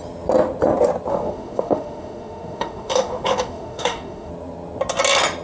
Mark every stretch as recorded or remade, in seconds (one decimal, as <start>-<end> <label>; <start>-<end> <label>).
0.0-1.1 recorded; 1.1-4.3 remade; 4.3-5.4 recorded